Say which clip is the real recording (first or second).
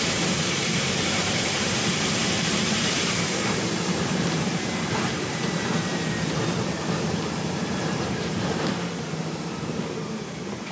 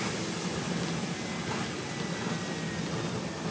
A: second